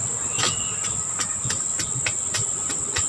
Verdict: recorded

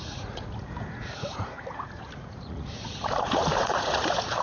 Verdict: remade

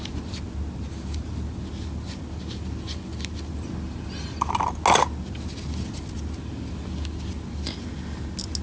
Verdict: recorded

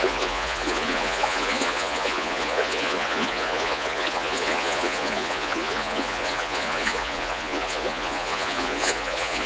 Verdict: remade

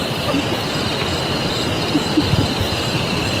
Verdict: recorded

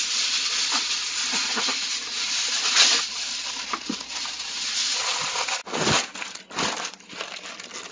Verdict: recorded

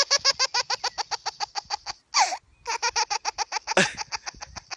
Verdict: recorded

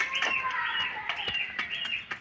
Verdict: recorded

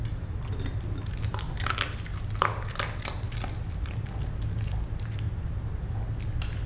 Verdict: recorded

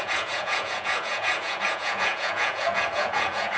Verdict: remade